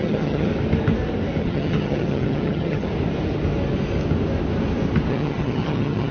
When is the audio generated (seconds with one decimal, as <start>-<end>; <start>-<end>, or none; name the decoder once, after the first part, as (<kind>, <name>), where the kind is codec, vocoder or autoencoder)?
0.0-0.5 (vocoder, HiFi-GAN); 1.4-2.9; 5.1-6.1

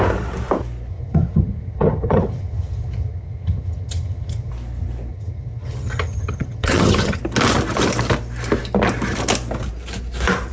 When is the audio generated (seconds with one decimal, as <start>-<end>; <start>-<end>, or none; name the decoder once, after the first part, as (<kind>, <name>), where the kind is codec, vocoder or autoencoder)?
0.9-4.5 (vocoder, HiFi-GAN); 5.1-7.2

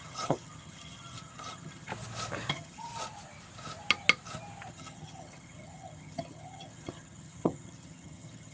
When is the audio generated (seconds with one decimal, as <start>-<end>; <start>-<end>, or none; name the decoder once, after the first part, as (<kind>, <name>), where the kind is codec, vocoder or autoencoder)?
0.0-1.9 (vocoder, HiFi-GAN); 2.5-2.9; 4.7-8.5

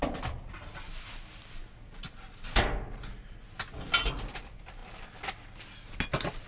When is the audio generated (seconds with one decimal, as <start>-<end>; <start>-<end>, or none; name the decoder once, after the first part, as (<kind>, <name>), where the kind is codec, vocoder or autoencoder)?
none

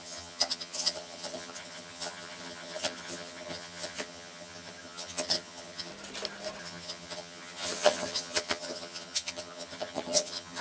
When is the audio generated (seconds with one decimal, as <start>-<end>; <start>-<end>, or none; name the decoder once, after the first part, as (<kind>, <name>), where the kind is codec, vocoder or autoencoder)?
0.0-5.9 (vocoder, HiFi-GAN); 6.6-10.6